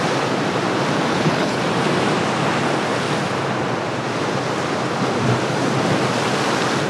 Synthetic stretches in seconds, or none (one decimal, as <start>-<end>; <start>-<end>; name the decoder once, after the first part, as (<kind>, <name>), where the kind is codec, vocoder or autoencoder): 1.1-1.6 (codec, HILCodec)